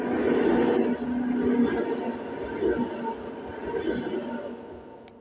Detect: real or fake real